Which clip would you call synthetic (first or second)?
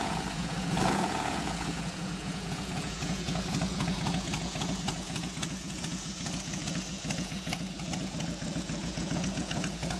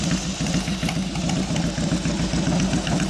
first